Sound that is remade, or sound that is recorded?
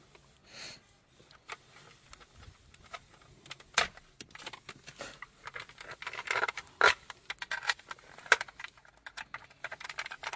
recorded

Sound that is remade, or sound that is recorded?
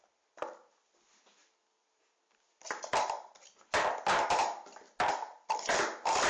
recorded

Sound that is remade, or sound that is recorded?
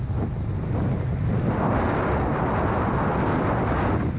recorded